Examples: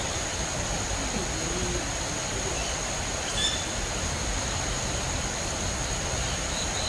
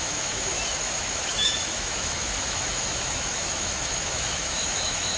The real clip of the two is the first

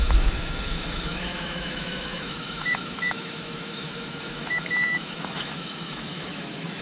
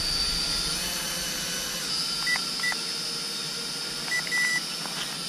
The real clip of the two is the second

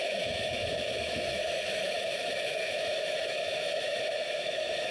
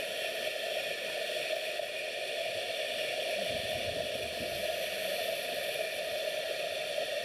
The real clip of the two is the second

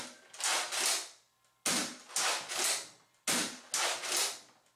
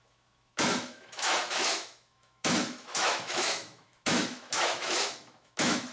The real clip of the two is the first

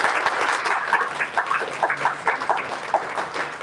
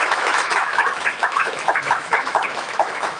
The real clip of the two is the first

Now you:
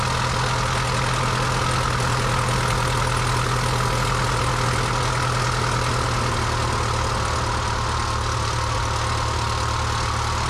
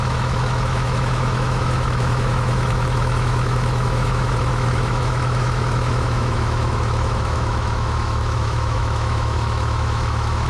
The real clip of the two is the first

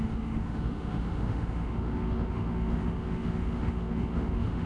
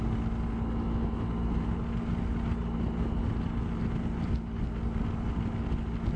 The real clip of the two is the second